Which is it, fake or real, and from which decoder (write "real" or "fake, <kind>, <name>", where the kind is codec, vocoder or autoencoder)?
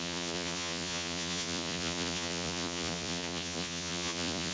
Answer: fake, vocoder, Vocos